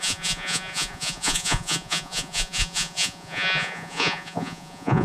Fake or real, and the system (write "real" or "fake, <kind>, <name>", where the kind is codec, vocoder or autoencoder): fake, vocoder, Vocos